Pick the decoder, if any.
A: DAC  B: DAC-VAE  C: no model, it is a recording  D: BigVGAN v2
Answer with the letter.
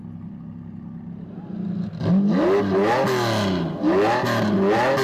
C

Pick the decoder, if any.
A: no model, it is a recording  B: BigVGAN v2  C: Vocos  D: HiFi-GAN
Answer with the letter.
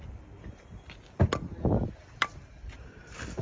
A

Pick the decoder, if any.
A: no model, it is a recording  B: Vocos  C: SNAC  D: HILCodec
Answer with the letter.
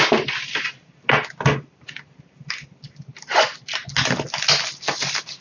A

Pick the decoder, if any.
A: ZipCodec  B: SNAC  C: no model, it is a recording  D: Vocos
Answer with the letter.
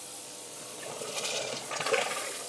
D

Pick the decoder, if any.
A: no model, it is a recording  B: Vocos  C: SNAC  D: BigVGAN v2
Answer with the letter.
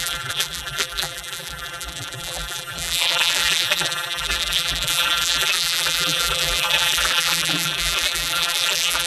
D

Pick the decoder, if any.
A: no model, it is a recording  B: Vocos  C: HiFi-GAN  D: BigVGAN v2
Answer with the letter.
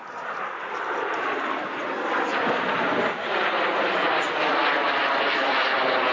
A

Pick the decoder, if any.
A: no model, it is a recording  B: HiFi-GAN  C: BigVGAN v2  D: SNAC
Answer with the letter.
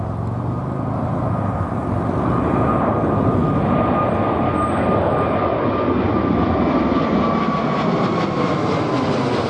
A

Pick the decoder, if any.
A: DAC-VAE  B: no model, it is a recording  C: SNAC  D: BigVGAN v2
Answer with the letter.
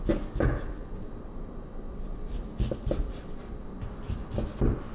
B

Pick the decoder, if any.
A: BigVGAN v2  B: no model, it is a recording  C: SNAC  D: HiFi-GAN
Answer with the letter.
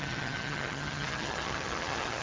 D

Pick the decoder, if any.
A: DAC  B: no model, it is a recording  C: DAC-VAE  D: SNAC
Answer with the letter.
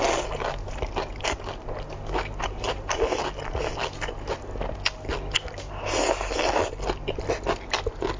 B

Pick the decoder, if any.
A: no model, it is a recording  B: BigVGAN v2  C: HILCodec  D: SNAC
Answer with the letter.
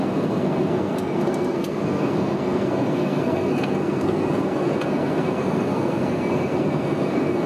D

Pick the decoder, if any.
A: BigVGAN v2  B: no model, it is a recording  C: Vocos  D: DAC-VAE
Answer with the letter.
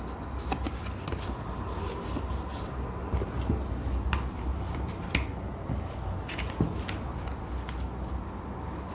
B